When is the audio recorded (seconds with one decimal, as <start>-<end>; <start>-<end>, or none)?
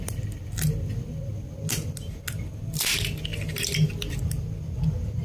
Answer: 0.0-5.2